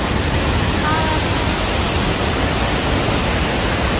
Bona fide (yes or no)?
yes